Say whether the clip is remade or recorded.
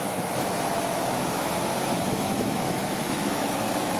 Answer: remade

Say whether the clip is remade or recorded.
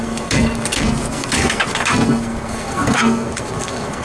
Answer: remade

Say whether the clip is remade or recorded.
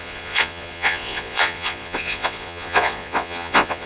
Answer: remade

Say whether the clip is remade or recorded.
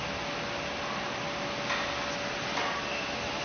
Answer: recorded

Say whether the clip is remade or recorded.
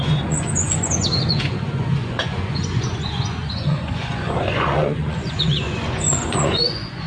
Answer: remade